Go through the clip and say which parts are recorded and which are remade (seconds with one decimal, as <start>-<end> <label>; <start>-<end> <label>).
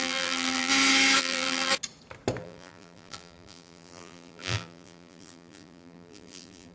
0.0-0.7 remade; 0.7-1.2 recorded; 1.2-1.7 remade; 1.7-2.4 recorded; 2.4-6.7 remade